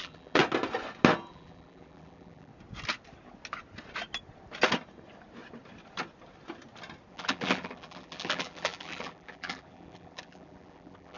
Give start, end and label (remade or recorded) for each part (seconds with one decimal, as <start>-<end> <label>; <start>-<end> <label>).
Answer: 0.0-0.4 remade; 0.4-1.3 recorded; 1.3-2.5 remade; 2.5-7.1 recorded; 7.1-11.2 remade